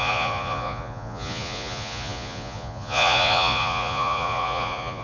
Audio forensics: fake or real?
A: fake